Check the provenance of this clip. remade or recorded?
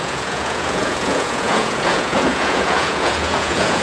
remade